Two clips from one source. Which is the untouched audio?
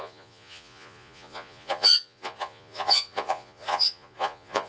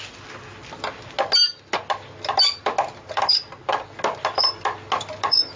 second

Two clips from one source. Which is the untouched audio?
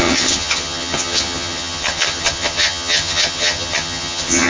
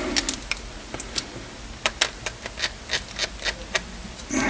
second